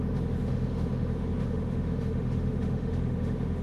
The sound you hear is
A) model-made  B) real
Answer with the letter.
A